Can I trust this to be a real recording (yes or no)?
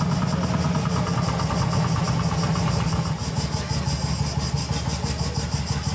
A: yes